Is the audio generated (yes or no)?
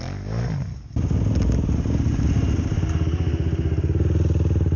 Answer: no